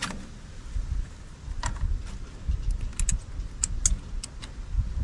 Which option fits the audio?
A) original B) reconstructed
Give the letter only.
A